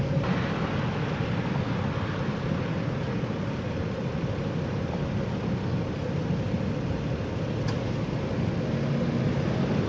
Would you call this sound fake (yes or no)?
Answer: no